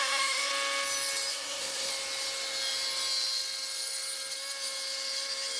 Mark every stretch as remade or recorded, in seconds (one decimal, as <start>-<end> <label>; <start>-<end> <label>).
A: 0.0-0.5 remade; 0.5-1.3 recorded; 1.3-1.9 remade; 1.9-5.6 recorded

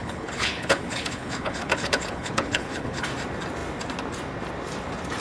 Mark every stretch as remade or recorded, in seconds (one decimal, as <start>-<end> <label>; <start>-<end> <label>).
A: 0.0-3.1 remade; 3.1-5.2 recorded

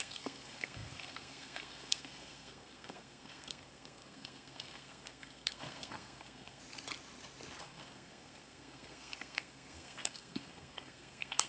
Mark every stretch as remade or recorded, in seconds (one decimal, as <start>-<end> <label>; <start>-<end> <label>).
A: 0.0-6.6 remade; 6.6-7.6 recorded; 7.6-11.5 remade

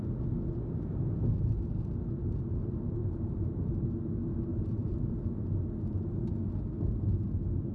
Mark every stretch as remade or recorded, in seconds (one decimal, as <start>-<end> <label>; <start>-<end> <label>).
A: 0.0-3.0 recorded; 3.0-3.6 remade; 3.6-4.5 recorded; 4.5-5.4 remade; 5.4-7.7 recorded

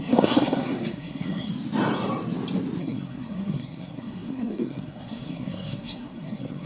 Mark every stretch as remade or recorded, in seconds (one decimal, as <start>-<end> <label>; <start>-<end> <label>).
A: 0.0-1.5 remade; 1.5-2.8 recorded; 2.8-6.7 remade

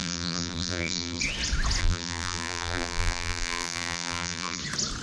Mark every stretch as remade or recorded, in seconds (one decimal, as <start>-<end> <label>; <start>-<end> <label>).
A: 0.0-1.2 remade; 1.2-1.8 recorded; 1.8-4.6 remade; 4.6-5.0 recorded